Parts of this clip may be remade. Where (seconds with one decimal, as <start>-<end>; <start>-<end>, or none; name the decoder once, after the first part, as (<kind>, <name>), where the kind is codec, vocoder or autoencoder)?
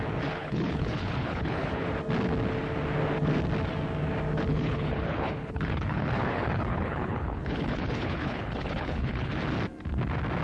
0.4-1.9 (codec, HILCodec); 4.5-9.3